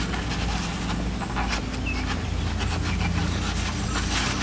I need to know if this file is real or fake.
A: real